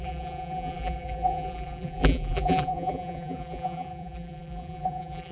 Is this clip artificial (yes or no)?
yes